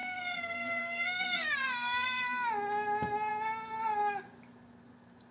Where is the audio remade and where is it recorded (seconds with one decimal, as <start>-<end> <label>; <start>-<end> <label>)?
0.0-2.5 remade; 2.5-5.3 recorded